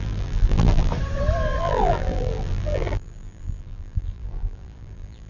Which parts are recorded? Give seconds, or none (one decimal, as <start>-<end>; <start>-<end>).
0.9-1.6